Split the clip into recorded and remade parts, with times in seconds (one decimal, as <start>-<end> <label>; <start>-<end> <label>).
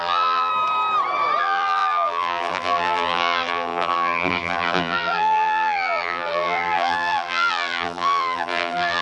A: 0.0-0.5 remade; 0.5-1.4 recorded; 1.4-9.0 remade